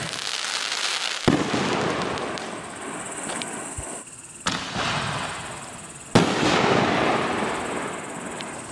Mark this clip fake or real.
real